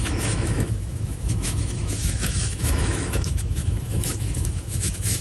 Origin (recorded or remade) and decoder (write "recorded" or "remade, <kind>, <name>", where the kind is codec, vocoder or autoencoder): remade, autoencoder, DAC-VAE